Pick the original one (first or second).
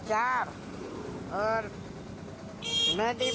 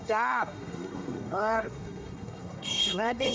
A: first